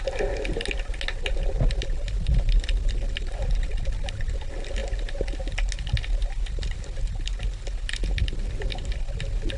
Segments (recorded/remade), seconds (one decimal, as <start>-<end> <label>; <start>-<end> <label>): 0.0-9.6 recorded